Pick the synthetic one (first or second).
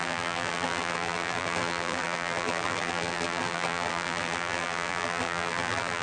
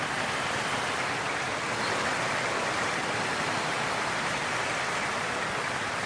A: first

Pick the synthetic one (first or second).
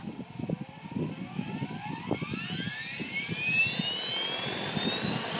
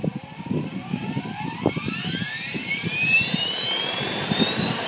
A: second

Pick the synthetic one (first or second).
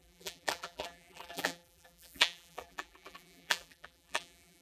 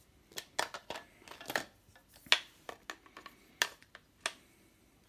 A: first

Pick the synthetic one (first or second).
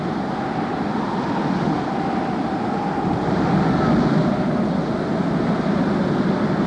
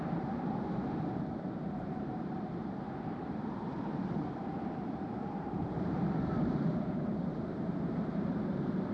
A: second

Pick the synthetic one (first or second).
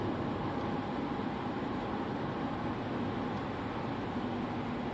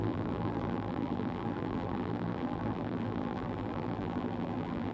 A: second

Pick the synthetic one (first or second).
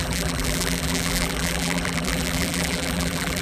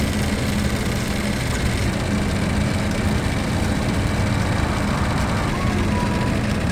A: first